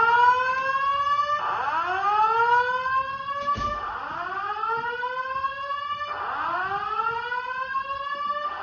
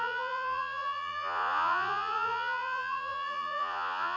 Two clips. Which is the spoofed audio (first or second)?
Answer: second